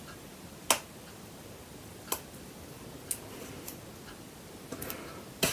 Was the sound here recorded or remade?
recorded